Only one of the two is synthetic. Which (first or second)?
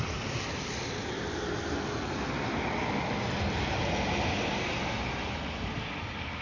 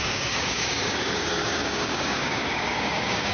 second